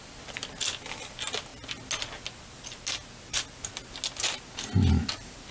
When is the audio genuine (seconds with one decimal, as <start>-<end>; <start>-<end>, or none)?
0.0-5.5